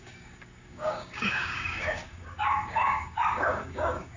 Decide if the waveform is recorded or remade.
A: remade